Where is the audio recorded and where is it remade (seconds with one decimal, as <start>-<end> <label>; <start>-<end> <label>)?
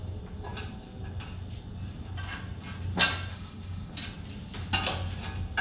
0.0-3.3 recorded; 3.3-3.9 remade; 3.9-5.6 recorded